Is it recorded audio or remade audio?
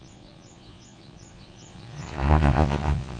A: remade